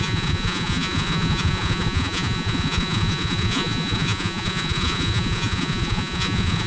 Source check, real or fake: fake